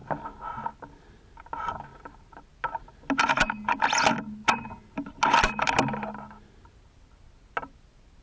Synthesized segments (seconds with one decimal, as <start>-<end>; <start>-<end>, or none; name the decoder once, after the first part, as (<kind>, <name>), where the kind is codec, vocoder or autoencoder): none